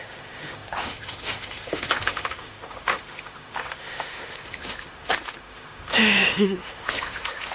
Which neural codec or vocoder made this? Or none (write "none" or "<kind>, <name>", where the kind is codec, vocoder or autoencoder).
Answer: autoencoder, DAC-VAE